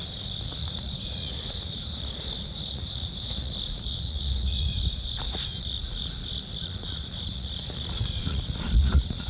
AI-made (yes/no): yes